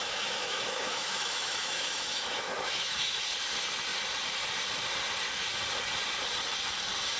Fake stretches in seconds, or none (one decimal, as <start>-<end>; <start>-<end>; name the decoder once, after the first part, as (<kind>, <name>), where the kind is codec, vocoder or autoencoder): 0.0-3.2 (autoencoder, DAC-VAE)